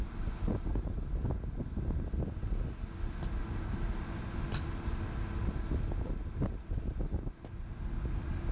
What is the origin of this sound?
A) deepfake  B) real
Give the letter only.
B